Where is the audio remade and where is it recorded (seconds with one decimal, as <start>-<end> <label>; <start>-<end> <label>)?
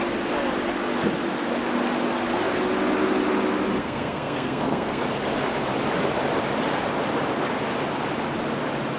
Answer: 0.0-3.8 recorded; 3.8-5.0 remade; 5.0-9.0 recorded